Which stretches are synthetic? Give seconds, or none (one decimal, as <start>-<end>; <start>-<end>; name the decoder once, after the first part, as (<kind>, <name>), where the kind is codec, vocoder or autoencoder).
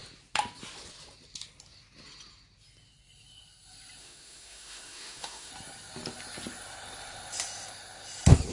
4.0-5.5 (autoencoder, DAC-VAE)